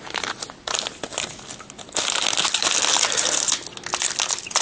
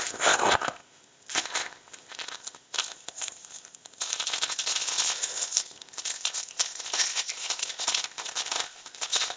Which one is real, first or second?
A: first